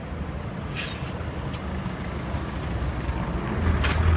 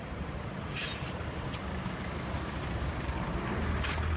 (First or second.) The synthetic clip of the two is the second